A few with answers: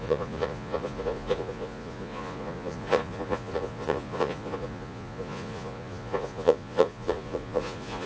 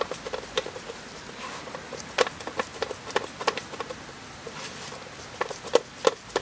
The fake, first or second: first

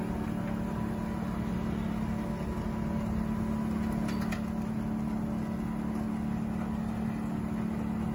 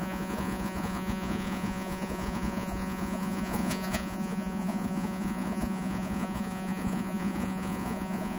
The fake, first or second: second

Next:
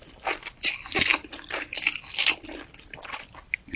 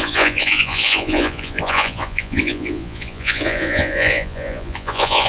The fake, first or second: second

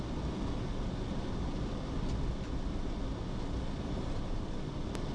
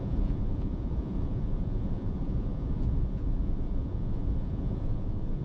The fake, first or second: second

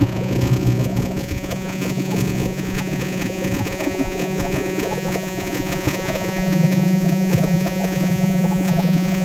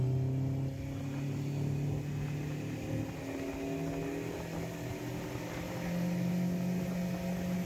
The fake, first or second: first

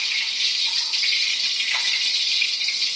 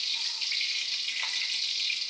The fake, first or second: first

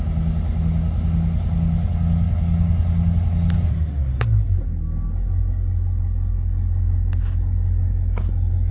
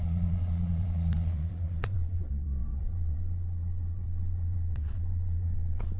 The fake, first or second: second